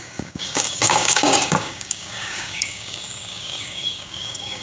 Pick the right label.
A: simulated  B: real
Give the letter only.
A